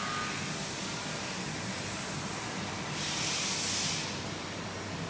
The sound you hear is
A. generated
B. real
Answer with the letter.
B